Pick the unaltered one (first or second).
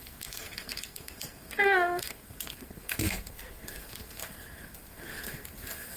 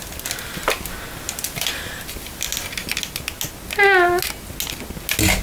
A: second